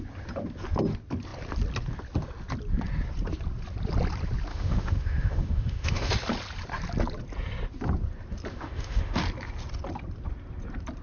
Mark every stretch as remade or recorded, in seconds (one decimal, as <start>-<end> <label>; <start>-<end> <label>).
0.0-4.5 recorded; 4.5-6.1 remade; 6.1-8.5 recorded; 8.5-9.2 remade; 9.2-11.0 recorded